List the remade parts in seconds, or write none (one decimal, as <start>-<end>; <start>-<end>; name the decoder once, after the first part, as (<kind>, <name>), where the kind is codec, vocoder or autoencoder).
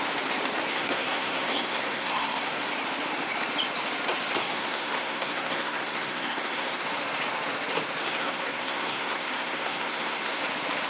0.7-2.7 (codec, SNAC); 4.4-6.8; 8.0-10.4